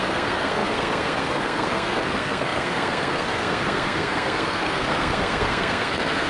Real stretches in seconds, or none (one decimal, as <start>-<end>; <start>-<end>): none